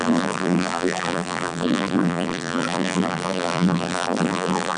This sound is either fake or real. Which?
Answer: fake